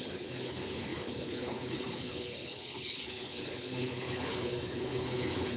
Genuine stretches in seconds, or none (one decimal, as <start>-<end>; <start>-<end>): none